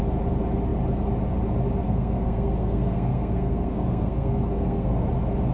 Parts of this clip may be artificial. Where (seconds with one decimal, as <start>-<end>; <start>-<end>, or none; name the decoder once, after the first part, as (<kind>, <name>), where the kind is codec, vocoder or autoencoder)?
1.8-5.1 (codec, SNAC)